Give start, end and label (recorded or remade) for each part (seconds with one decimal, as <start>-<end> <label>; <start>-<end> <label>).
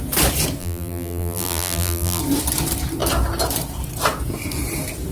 0.0-0.6 recorded; 0.6-2.2 remade; 2.2-5.1 recorded